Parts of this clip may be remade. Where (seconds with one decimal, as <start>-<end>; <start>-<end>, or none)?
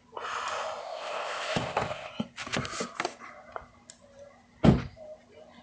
0.8-2.1